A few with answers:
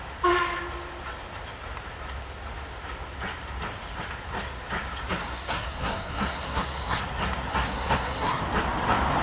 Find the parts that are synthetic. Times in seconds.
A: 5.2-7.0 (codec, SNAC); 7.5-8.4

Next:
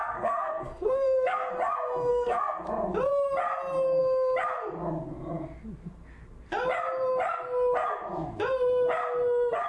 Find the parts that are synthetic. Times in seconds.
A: 0.0-1.5 (codec, SNAC); 2.1-2.6

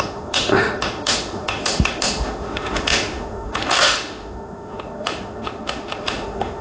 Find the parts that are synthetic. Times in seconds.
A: 0.0-6.6 (autoencoder, DAC-VAE)

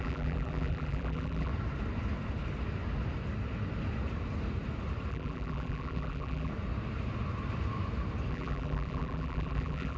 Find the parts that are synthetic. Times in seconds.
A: 0.0-1.5 (vocoder, BigVGAN v2); 5.1-6.5; 8.3-10.0

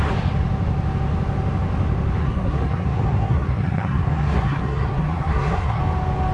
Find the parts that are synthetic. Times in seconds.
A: 2.2-5.8 (codec, SNAC)

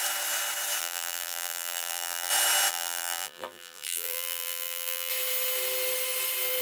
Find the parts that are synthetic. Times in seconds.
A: 0.8-2.3 (vocoder, BigVGAN v2); 2.7-5.1

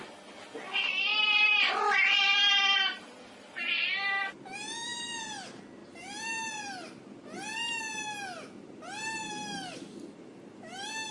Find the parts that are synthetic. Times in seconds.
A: 1.1-1.7 (vocoder, BigVGAN v2); 2.2-3.7; 5.8-7.8

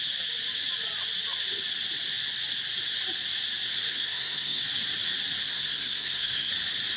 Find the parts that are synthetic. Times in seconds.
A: 3.9-4.6 (codec, SNAC); 5.5-6.5